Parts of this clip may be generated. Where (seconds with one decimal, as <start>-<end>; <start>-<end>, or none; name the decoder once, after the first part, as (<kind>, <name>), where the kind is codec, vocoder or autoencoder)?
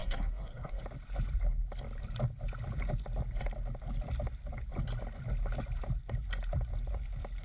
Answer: 0.0-0.8 (codec, SNAC)